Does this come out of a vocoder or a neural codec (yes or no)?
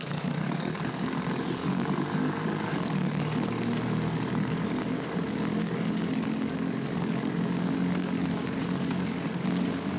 yes